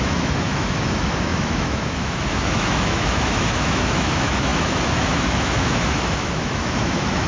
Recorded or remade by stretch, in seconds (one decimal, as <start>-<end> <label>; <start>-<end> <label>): 0.0-7.3 remade